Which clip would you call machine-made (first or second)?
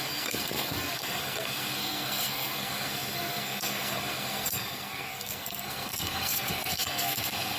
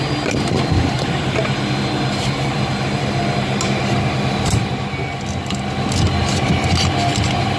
first